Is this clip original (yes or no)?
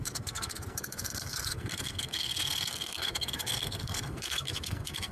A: no